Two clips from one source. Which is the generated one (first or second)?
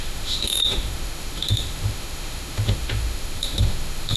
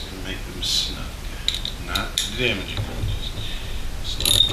first